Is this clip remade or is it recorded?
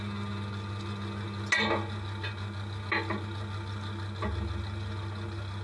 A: recorded